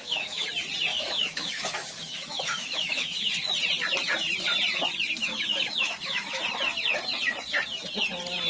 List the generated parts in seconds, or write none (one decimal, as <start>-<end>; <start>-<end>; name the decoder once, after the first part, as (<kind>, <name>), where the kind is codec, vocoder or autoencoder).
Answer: 0.0-0.5 (autoencoder, DAC-VAE); 0.9-3.3; 5.3-6.4

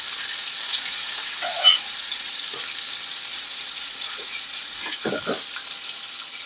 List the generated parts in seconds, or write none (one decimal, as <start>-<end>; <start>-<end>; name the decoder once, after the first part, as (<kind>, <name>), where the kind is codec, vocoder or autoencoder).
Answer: 0.7-2.3 (vocoder, Vocos); 3.3-5.1